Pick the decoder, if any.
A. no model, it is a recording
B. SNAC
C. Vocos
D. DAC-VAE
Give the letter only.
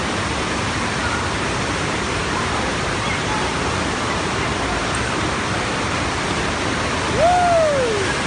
A